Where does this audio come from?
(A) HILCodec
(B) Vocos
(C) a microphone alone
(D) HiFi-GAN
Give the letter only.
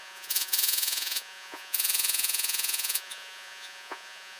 B